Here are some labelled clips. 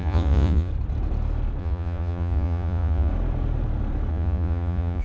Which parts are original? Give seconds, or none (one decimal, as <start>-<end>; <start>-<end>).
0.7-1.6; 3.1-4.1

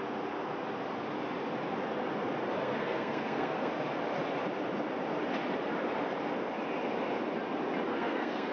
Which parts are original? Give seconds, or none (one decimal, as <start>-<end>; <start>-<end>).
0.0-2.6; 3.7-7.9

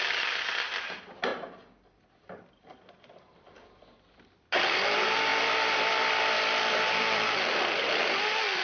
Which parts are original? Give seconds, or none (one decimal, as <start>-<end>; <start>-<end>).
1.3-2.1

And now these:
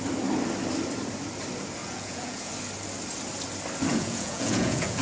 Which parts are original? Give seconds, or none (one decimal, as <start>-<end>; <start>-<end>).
0.0-1.8; 2.5-3.9

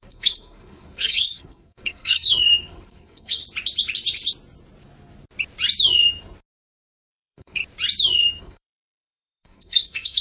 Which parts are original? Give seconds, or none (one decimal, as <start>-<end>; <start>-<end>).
3.4-7.1; 7.6-8.4